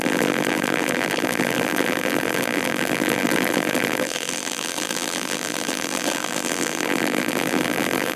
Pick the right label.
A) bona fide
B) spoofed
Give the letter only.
B